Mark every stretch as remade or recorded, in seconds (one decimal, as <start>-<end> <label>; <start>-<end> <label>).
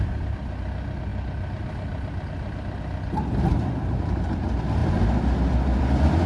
0.0-6.3 recorded